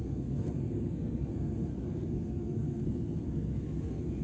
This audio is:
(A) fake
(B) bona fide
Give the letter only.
A